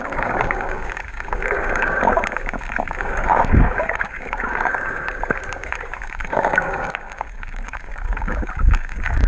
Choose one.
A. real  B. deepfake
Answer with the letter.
B